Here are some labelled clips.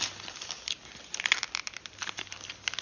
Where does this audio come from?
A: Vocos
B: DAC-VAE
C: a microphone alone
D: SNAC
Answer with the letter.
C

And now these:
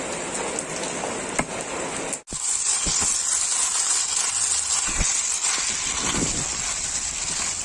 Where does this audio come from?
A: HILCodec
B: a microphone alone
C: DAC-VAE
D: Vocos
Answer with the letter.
B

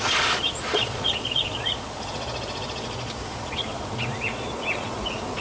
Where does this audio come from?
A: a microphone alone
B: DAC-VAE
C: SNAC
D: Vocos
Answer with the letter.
D